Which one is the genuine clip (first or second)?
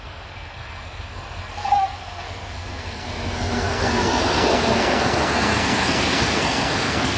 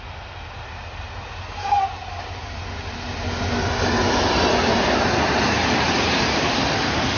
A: second